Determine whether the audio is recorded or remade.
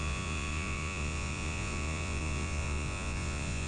remade